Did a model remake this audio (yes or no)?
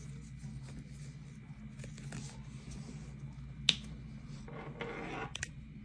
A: no